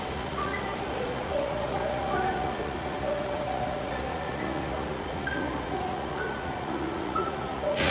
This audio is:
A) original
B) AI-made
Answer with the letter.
B